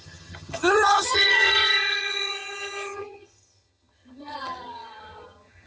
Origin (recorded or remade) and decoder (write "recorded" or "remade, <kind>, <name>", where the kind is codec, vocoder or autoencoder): remade, vocoder, HiFi-GAN